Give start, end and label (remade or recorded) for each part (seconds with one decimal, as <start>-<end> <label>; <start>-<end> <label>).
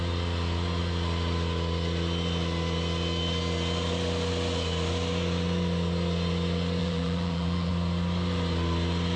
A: 0.0-6.8 recorded; 6.8-7.7 remade; 7.7-9.2 recorded